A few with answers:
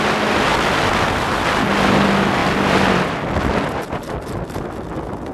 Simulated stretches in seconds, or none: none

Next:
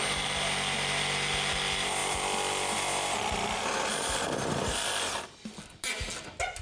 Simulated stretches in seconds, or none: none